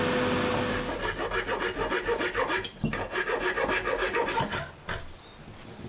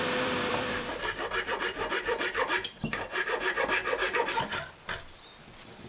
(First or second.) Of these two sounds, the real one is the first